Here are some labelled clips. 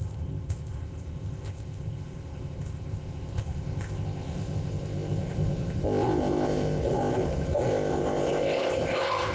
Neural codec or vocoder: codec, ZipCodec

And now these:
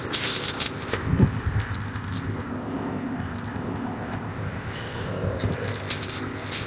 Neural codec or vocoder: codec, ZipCodec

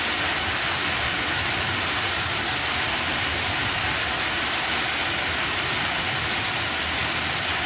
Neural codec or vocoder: none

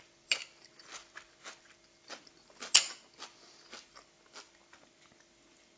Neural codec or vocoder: none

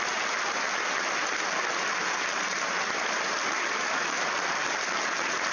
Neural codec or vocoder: none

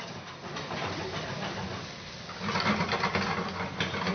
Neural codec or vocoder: none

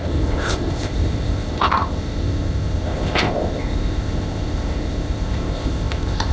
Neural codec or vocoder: codec, ZipCodec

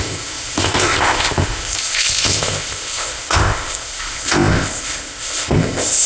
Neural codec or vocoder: codec, ZipCodec